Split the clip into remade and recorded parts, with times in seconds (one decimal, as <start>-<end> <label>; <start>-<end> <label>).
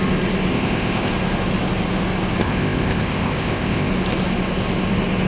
0.0-0.5 recorded; 0.5-1.1 remade; 1.1-2.4 recorded; 2.4-3.9 remade; 3.9-5.3 recorded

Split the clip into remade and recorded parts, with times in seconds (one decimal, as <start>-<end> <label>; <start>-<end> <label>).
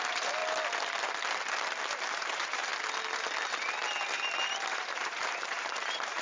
0.0-0.4 remade; 0.4-1.8 recorded; 1.8-2.7 remade; 2.7-4.7 recorded; 4.7-6.2 remade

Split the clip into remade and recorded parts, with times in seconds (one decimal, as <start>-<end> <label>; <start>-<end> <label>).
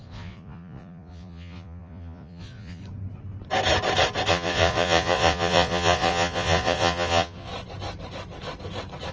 0.0-2.8 remade; 2.8-4.3 recorded; 4.3-7.5 remade; 7.5-9.1 recorded